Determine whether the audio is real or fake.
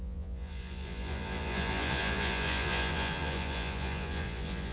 fake